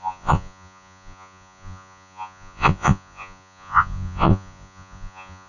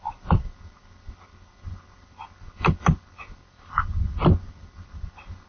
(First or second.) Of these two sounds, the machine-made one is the first